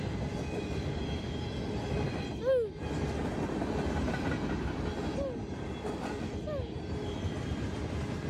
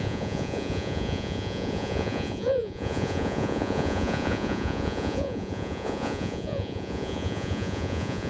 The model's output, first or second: second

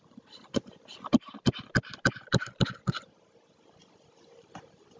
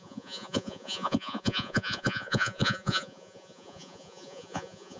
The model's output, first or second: second